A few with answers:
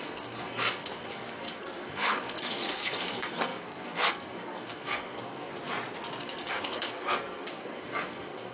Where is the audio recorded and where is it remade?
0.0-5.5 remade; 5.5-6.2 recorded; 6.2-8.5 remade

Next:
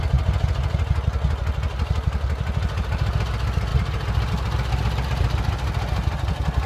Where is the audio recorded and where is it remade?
0.0-6.7 recorded

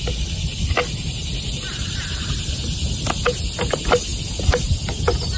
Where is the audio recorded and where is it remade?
0.0-5.4 recorded

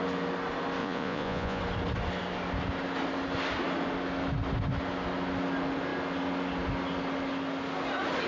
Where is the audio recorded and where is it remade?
0.0-0.8 recorded; 0.8-1.6 remade; 1.6-8.3 recorded

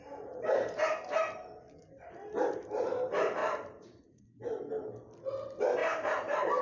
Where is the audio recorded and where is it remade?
0.0-3.4 recorded; 3.4-4.2 remade; 4.2-5.8 recorded; 5.8-6.6 remade

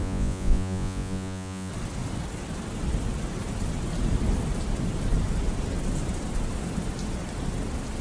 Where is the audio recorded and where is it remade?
0.0-1.7 remade; 1.7-8.0 recorded